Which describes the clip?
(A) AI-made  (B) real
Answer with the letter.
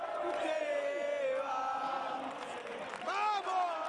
B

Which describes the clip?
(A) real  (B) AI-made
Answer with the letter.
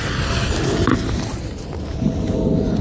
A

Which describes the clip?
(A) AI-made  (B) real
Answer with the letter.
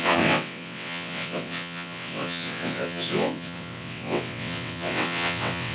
A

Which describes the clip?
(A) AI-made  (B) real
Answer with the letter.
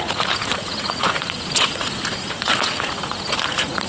A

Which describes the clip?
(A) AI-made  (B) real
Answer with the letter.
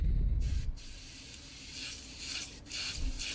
B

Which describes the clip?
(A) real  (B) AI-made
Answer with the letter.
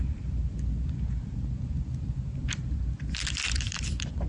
B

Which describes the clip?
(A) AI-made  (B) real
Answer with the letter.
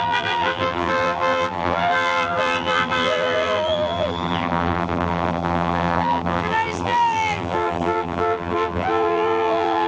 A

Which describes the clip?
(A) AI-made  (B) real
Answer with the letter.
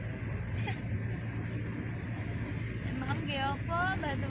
B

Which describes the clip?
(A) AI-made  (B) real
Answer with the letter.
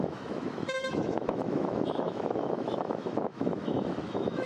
A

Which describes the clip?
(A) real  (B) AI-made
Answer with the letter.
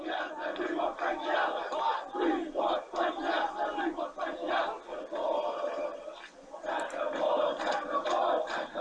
B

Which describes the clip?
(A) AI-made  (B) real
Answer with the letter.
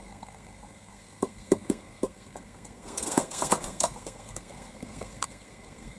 A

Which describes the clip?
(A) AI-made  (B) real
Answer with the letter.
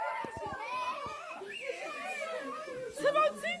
B